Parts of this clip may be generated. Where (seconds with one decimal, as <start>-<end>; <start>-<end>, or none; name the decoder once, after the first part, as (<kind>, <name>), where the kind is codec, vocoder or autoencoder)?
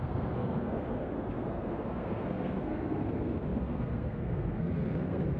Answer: 0.0-5.4 (codec, SNAC)